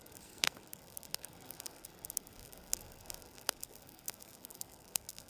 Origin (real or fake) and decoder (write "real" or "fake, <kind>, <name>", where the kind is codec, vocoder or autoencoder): fake, codec, SNAC